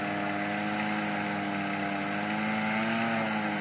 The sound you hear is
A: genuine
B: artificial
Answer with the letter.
A